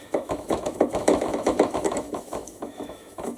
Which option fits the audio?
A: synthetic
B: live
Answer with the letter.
A